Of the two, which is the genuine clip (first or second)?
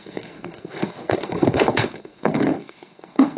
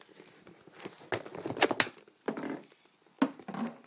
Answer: second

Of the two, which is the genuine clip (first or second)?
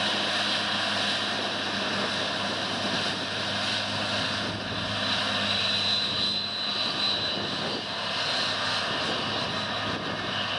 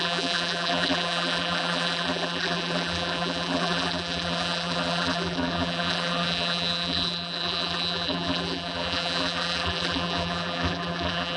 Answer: first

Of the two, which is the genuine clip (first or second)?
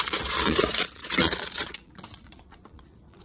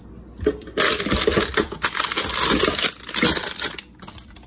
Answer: second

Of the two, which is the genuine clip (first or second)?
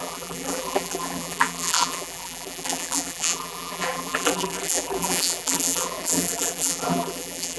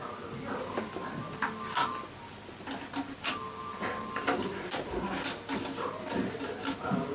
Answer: second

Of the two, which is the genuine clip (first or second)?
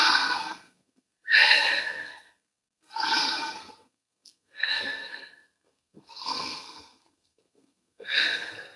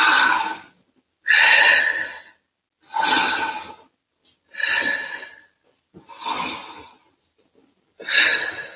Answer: second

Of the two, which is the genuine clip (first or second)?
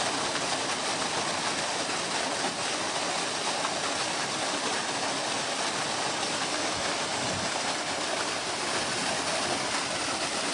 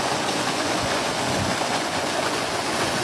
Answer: first